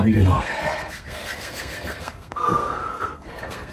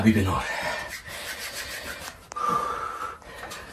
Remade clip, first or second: first